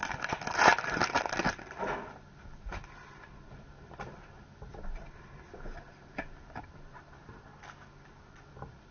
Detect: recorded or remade recorded